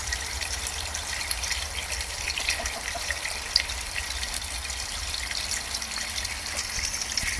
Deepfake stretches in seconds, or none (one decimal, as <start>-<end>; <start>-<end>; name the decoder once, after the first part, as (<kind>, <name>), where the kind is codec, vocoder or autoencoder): 0.0-4.4 (vocoder, BigVGAN v2)